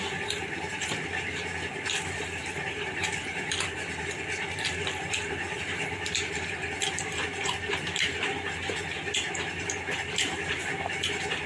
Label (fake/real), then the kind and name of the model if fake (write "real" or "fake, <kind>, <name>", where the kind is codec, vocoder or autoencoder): fake, vocoder, BigVGAN v2